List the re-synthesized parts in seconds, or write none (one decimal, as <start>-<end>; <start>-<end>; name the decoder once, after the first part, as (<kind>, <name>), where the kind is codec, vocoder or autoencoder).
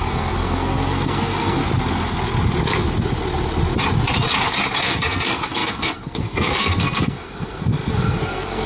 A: 0.0-1.6 (codec, SNAC); 4.8-8.7